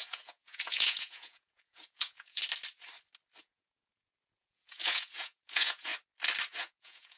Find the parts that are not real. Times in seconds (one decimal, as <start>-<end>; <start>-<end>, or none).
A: 0.0-2.4; 3.4-5.9; 6.5-7.2